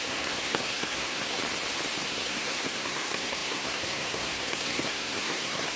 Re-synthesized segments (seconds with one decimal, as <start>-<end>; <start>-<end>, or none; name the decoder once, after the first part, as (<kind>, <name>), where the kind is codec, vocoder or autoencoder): 0.0-1.4 (codec, SNAC); 2.0-5.8

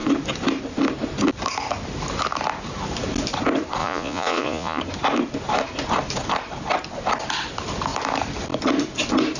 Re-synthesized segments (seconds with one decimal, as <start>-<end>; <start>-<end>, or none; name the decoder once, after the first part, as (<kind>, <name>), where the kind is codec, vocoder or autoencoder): 3.8-4.8 (vocoder, Vocos)

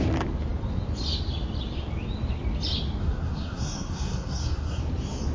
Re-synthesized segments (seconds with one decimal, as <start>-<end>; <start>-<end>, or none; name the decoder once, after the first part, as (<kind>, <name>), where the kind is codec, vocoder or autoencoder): 3.0-4.8 (codec, SNAC)

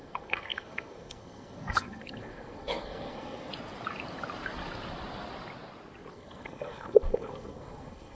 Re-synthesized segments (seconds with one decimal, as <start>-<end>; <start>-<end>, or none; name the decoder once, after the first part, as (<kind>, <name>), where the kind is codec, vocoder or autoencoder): 0.0-3.5 (codec, SNAC); 6.1-8.2